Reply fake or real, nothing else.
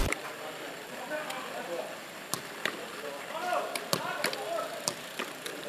fake